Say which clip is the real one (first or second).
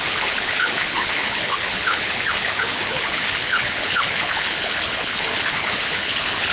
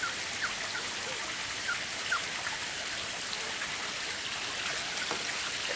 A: second